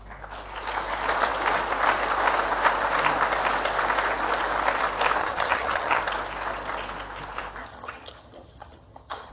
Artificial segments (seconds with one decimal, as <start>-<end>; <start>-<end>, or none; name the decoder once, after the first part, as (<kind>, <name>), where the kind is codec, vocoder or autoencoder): 5.2-6.0 (vocoder, HiFi-GAN); 7.6-9.3